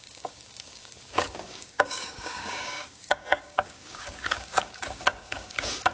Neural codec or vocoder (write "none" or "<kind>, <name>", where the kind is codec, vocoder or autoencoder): codec, DAC